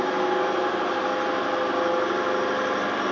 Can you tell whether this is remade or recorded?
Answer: recorded